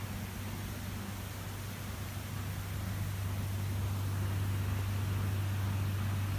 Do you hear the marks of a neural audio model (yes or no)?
no